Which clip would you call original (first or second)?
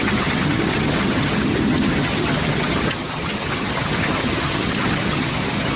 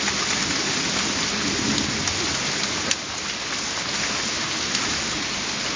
second